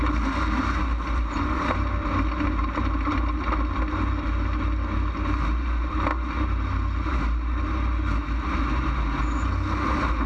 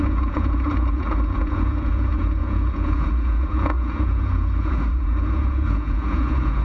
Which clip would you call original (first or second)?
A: first